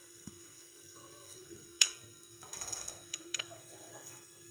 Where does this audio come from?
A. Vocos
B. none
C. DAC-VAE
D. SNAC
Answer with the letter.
D